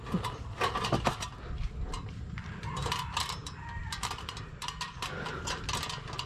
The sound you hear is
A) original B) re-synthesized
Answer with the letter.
B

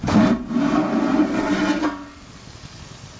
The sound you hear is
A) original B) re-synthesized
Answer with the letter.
A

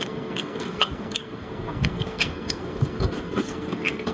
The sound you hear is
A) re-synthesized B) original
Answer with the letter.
A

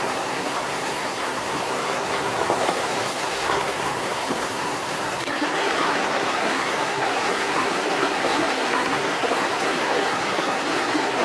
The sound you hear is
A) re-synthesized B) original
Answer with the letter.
A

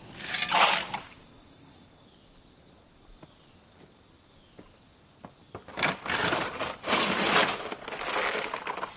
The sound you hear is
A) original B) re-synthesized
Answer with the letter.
A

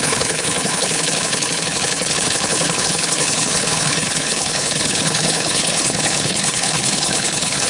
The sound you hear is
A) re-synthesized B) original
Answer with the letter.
A